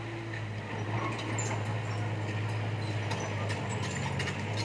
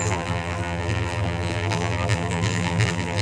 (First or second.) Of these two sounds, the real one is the first